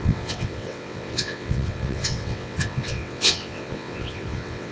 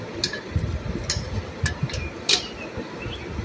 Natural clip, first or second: second